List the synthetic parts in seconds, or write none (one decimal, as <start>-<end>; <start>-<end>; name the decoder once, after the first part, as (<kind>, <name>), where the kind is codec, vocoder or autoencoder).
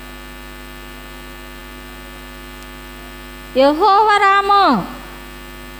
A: none